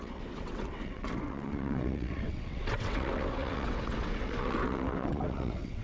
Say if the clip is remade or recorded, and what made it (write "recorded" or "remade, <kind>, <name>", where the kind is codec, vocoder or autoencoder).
remade, vocoder, WaveNeXt